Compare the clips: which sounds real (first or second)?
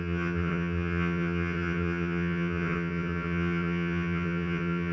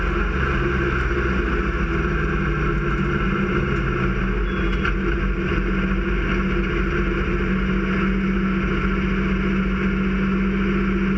second